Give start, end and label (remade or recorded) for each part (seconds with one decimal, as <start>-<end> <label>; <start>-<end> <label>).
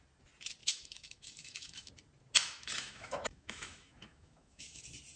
0.0-0.6 recorded; 0.6-1.9 remade; 1.9-2.4 recorded; 2.4-4.8 remade; 4.8-5.2 recorded